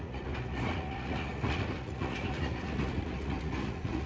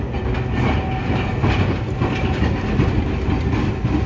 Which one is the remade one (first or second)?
first